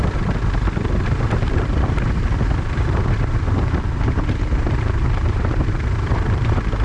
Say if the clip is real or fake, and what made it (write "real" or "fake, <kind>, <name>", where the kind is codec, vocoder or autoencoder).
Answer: fake, vocoder, BigVGAN v2